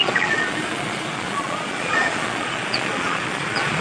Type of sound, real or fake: fake